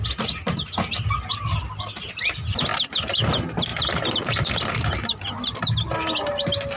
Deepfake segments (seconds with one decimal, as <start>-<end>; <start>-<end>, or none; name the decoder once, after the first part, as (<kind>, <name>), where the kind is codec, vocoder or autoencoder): 2.7-3.3 (vocoder, BigVGAN v2)